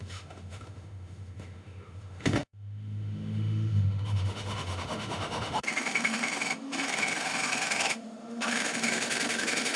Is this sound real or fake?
fake